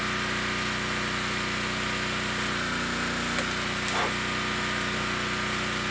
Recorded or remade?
recorded